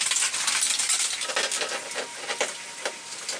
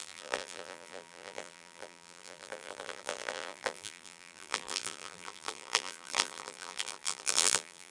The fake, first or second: second